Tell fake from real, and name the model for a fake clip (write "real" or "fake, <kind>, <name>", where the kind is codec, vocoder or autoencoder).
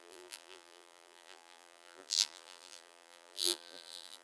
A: fake, vocoder, BigVGAN v2